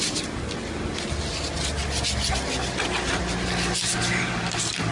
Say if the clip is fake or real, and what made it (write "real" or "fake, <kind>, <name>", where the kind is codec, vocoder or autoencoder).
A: real